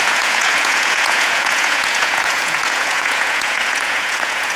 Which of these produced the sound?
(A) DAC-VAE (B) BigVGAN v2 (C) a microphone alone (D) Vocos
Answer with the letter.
D